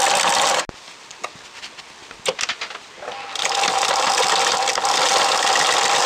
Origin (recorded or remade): recorded